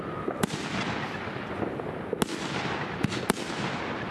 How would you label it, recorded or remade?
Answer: recorded